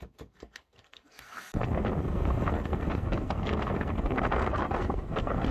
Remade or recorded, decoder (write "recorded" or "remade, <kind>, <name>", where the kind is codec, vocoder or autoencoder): remade, codec, SNAC